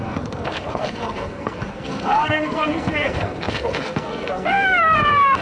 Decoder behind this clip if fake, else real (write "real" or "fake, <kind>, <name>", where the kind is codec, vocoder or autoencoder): fake, codec, SNAC